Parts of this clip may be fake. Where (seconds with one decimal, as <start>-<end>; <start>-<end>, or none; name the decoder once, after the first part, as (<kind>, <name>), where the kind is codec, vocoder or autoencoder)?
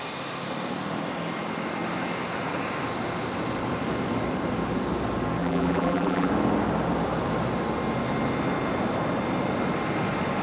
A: 5.4-6.3 (vocoder, BigVGAN v2)